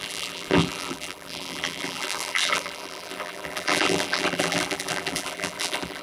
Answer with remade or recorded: remade